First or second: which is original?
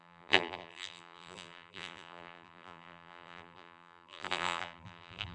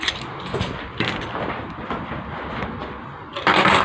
second